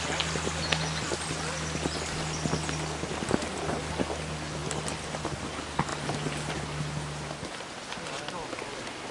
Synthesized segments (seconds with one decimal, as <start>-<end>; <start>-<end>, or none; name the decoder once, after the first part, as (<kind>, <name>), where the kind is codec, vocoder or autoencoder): none